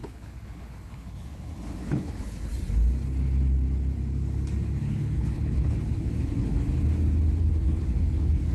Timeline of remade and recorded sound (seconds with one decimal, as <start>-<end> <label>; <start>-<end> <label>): 0.0-2.5 remade; 2.5-4.8 recorded; 4.8-6.5 remade; 6.5-7.4 recorded; 7.4-8.5 remade